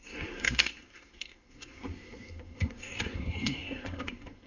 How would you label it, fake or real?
fake